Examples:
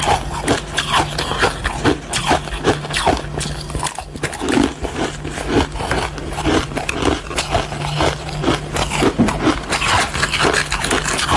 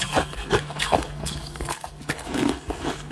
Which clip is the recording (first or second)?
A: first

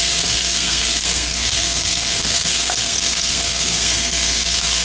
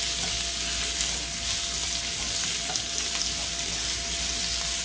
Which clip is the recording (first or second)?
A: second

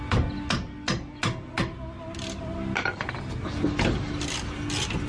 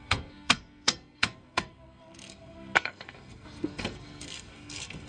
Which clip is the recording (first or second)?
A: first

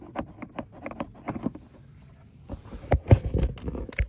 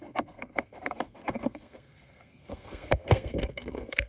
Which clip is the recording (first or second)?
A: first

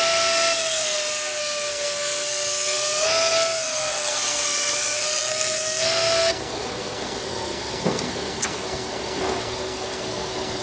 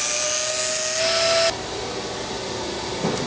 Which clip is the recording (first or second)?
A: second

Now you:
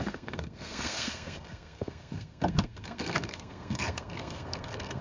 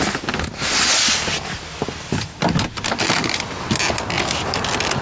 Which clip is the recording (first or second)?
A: second